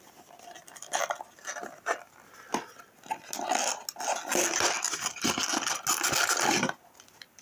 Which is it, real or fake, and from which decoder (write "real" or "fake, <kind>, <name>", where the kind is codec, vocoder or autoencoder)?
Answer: real